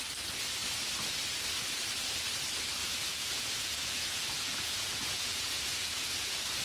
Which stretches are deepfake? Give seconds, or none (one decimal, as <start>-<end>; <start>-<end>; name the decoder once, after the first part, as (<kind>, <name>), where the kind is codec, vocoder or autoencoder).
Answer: 2.8-6.6 (vocoder, Vocos)